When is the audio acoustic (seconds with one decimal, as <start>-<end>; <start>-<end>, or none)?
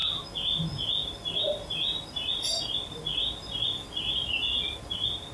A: 0.0-5.3